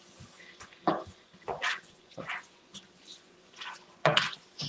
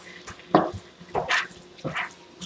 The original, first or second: second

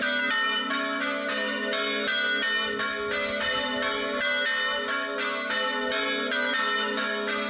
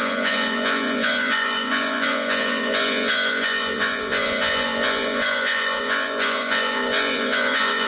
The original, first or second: first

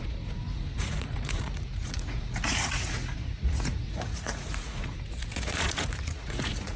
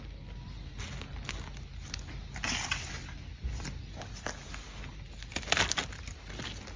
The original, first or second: second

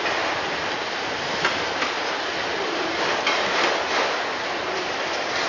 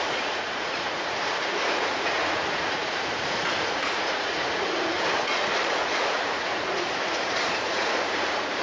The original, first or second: first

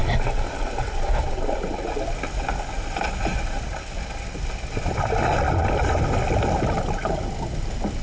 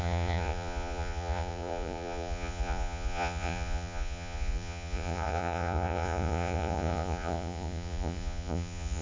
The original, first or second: first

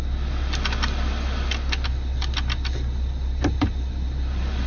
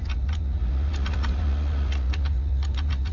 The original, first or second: first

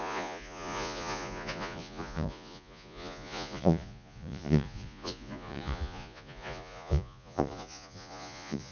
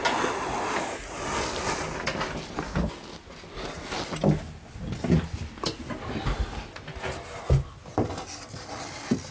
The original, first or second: second